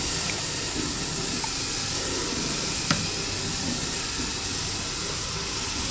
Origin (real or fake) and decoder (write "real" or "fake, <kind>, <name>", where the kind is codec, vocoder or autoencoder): real